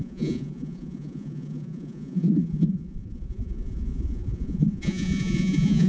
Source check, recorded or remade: remade